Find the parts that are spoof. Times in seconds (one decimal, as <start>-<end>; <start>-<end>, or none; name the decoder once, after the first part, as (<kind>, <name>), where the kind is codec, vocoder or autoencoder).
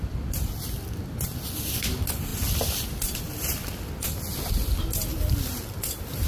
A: none